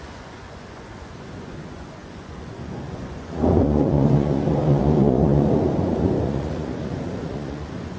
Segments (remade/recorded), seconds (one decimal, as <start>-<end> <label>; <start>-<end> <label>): 0.0-8.0 remade